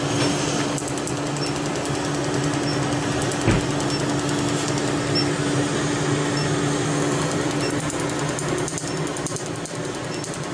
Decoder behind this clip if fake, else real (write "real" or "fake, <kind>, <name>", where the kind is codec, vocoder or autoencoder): real